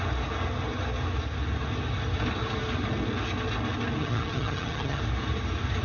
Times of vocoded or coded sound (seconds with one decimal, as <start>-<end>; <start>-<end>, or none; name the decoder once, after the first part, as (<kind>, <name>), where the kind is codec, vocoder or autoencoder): 4.0-5.0 (vocoder, HiFi-GAN)